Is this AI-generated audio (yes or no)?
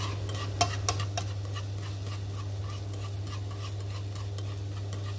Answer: no